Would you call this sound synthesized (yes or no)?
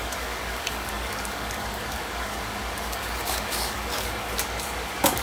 yes